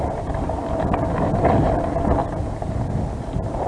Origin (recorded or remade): recorded